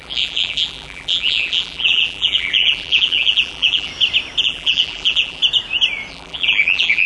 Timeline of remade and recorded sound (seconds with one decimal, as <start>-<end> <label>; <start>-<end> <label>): 0.0-3.9 remade; 3.9-4.4 recorded; 4.4-5.4 remade; 5.4-6.1 recorded; 6.1-7.1 remade